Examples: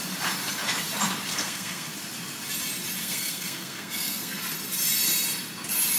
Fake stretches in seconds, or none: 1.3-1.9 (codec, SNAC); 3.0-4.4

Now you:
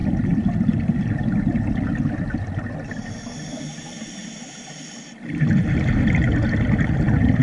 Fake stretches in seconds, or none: none

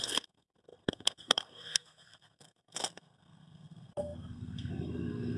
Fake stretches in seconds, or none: 0.0-5.4 (codec, SNAC)

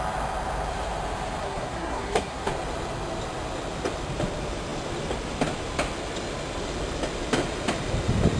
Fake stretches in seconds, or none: 1.4-2.5 (codec, SNAC)

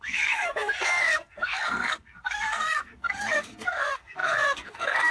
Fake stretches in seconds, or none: 0.0-5.1 (codec, SNAC)

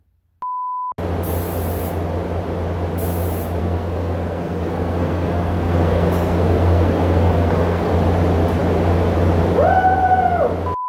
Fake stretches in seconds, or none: 3.6-7.9 (codec, SNAC)